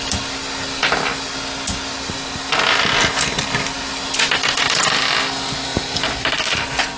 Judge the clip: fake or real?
real